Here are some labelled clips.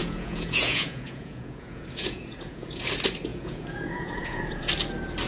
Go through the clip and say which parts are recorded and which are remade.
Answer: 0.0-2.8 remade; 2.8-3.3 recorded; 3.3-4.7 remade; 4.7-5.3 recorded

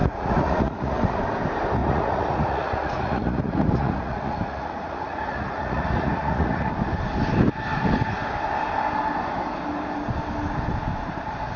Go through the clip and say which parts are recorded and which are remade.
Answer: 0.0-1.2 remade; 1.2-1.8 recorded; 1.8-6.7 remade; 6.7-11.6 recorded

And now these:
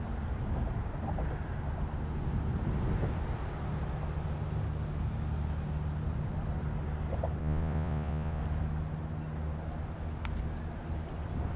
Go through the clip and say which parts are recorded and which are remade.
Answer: 0.0-7.4 recorded; 7.4-8.4 remade; 8.4-11.6 recorded